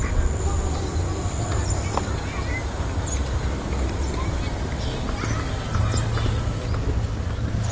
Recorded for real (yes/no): yes